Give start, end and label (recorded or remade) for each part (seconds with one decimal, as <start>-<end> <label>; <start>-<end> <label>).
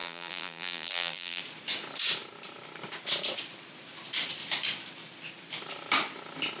0.0-1.4 remade; 1.4-6.6 recorded